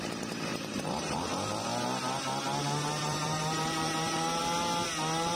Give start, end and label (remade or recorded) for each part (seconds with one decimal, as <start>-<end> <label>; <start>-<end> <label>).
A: 0.0-0.5 recorded; 0.5-1.3 remade; 1.3-3.0 recorded; 3.0-4.4 remade; 4.4-5.4 recorded